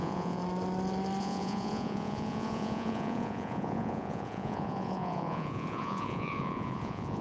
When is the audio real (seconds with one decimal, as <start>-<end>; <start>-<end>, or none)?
0.4-1.2